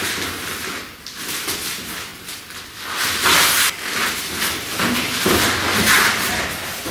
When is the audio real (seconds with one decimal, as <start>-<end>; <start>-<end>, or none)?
0.0-6.9

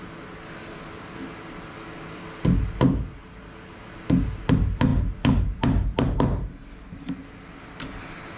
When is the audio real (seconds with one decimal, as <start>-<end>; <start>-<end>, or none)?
0.0-8.4

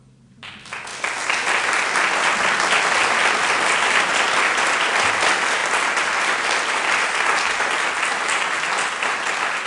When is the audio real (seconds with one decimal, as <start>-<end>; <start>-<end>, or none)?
0.0-9.7

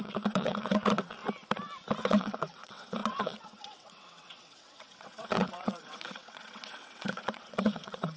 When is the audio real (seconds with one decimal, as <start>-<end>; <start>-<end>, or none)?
1.2-2.0

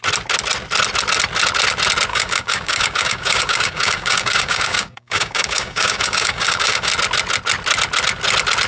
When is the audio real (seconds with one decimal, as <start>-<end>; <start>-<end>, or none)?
0.0-2.1; 6.9-8.7

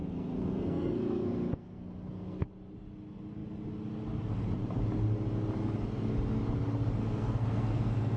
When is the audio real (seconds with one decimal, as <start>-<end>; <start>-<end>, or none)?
2.5-7.0

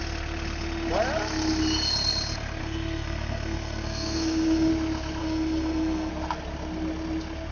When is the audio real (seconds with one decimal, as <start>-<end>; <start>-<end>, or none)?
0.0-2.6; 4.7-5.2; 6.1-7.5

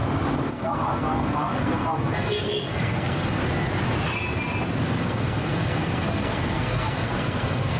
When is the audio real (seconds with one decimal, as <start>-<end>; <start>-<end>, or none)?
0.0-0.5; 3.4-5.0